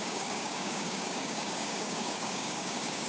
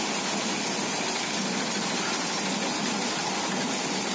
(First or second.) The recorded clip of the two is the second